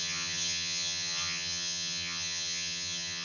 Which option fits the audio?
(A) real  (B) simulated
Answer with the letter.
B